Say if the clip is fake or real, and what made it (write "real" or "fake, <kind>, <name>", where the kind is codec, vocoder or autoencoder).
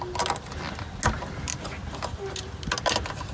real